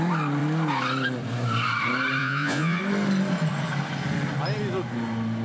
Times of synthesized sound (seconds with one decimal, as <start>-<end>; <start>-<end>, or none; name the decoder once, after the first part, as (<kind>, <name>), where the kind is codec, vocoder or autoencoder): 2.2-2.8 (vocoder, Vocos)

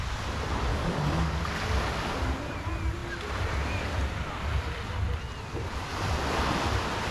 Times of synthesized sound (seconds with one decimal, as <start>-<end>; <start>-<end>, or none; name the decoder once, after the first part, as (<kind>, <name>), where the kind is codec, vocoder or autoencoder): 0.7-1.4 (codec, DAC)

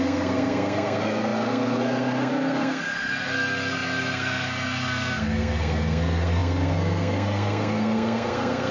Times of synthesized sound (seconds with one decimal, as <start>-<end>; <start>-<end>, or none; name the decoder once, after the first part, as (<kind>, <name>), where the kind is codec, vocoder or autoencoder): 0.0-8.7 (codec, SNAC)

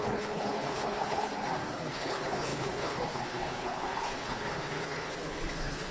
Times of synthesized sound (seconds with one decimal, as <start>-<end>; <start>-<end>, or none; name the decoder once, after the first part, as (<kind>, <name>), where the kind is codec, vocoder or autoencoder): 0.0-1.3 (codec, HILCodec); 1.9-5.9

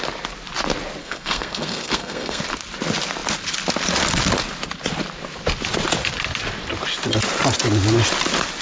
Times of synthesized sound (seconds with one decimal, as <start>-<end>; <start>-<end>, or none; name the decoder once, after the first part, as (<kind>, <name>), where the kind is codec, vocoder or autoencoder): 1.0-2.4 (codec, SNAC)

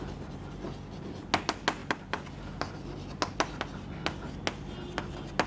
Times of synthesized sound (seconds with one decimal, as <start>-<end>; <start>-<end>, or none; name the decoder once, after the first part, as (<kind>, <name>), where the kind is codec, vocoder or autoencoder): none

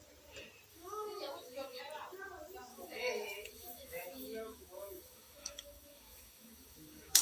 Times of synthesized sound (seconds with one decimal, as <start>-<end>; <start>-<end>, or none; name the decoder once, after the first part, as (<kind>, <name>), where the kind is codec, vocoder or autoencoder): 0.7-1.8 (autoencoder, DAC-VAE); 2.7-7.2

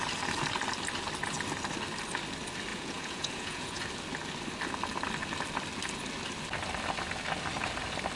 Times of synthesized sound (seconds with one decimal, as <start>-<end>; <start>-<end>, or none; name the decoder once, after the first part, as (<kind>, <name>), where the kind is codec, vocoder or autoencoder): 2.7-3.8 (vocoder, Vocos)